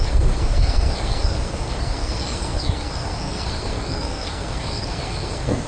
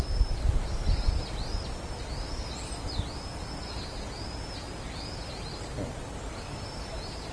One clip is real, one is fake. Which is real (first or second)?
second